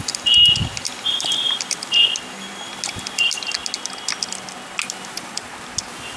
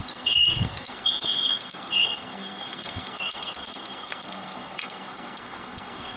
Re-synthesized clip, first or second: second